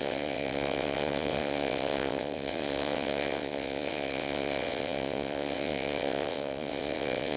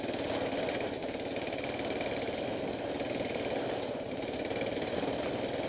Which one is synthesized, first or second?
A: first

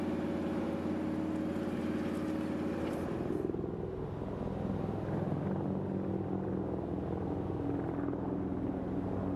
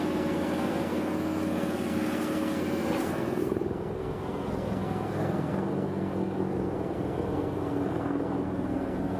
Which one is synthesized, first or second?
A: second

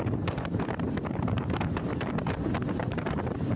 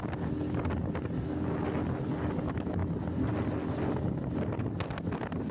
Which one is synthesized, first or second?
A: first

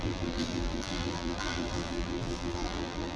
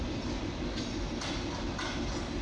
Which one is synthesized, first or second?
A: first